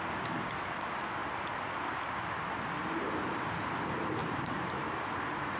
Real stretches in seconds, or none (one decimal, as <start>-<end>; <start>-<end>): 0.0-4.2; 5.1-5.6